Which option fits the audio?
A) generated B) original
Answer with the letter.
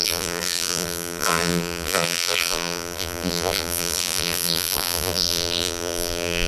A